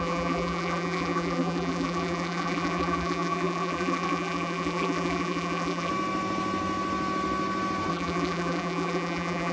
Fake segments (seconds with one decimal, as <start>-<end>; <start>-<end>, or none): 0.0-5.9; 7.9-9.5